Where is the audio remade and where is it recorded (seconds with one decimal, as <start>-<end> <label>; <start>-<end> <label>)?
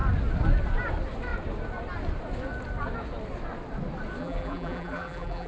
0.0-4.2 recorded; 4.2-5.5 remade